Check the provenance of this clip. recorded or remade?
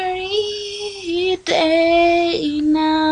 recorded